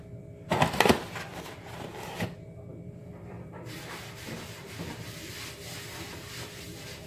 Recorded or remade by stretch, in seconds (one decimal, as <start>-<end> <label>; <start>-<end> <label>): 0.0-1.3 recorded; 1.3-1.9 remade; 1.9-2.7 recorded; 2.7-6.6 remade; 6.6-7.1 recorded